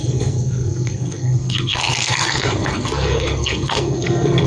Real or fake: fake